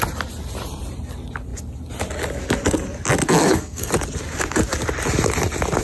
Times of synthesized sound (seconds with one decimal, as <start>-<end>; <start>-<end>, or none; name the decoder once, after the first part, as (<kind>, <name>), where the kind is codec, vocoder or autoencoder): 3.4-3.9 (codec, SNAC)